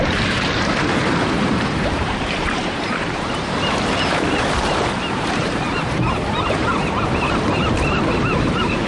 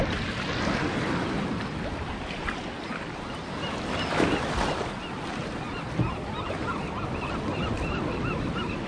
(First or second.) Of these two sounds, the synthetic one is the first